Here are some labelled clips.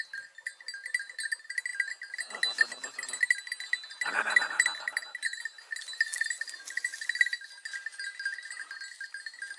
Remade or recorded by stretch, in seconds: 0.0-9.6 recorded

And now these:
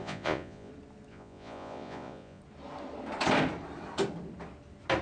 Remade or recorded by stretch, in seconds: 0.0-0.7 remade; 0.7-1.1 recorded; 1.1-2.4 remade; 2.4-5.0 recorded